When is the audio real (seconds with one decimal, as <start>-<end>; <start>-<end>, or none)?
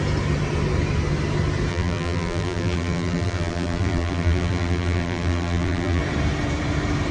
0.0-1.7; 6.0-7.1